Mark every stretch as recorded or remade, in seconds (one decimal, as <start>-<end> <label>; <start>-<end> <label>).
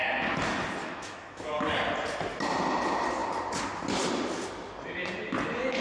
0.0-0.8 recorded; 0.8-1.4 remade; 1.4-5.8 recorded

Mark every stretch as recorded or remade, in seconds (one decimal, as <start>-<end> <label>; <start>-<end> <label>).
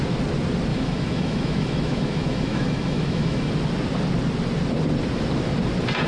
0.0-0.7 recorded; 0.7-3.5 remade; 3.5-6.1 recorded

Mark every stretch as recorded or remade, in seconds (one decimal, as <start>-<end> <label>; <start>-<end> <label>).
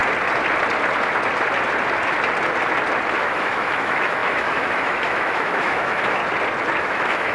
0.0-3.2 recorded; 3.2-6.2 remade; 6.2-6.8 recorded; 6.8-7.3 remade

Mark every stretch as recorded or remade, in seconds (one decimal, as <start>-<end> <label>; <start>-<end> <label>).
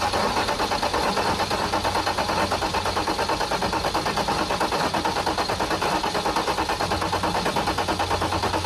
0.0-8.7 recorded